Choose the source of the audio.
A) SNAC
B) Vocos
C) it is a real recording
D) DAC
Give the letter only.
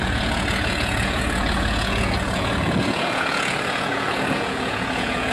B